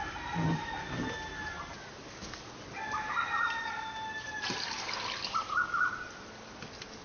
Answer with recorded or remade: recorded